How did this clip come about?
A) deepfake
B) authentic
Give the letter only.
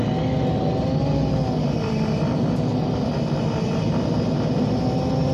B